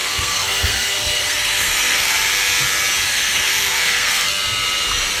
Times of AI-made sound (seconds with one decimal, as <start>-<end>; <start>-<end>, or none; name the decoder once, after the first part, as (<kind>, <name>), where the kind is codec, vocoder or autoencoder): 0.0-2.1 (codec, SNAC); 3.1-4.3